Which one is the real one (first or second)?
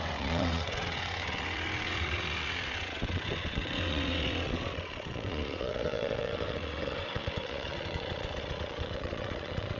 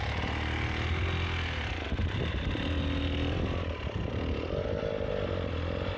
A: second